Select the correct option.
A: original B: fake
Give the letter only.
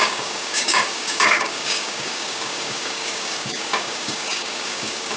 B